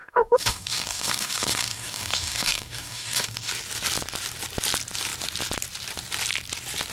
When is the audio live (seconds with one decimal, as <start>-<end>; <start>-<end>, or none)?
3.5-6.9